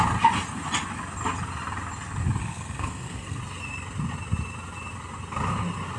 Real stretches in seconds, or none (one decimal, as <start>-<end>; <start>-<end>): 0.0-2.4; 3.4-6.0